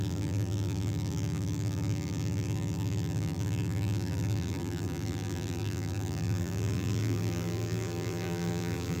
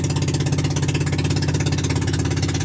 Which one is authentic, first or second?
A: second